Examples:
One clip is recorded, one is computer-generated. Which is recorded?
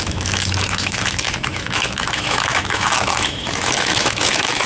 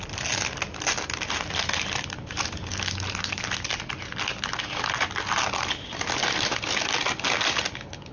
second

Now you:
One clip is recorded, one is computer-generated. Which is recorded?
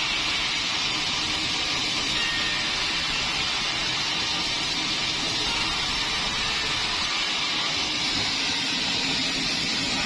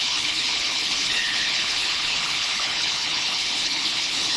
first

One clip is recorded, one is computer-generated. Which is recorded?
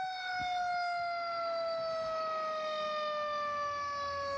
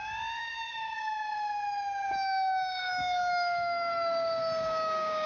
first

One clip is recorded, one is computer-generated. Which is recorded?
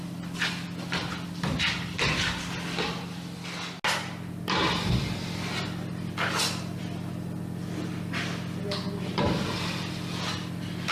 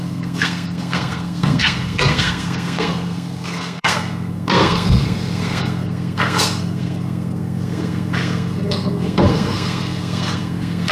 first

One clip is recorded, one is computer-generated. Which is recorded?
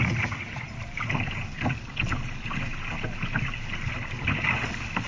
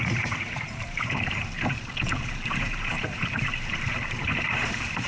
first